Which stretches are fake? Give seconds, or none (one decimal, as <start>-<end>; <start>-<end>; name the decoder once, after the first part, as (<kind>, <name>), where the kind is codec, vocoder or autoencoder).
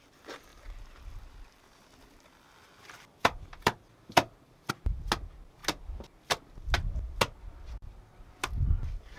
0.5-4.7 (vocoder, BigVGAN v2)